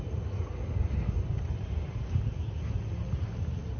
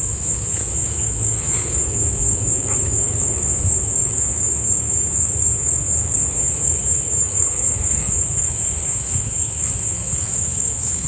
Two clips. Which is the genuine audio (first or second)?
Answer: first